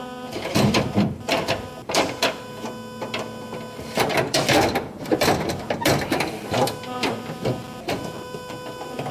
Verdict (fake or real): fake